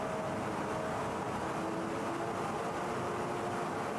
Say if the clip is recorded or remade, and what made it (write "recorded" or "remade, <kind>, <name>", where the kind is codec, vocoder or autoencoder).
recorded